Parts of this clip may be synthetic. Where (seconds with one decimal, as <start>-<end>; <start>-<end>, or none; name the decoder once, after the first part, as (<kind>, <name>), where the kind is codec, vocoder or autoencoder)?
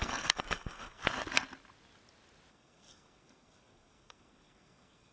0.0-1.0 (codec, SNAC); 2.5-5.1